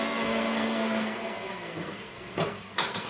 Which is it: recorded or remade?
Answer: remade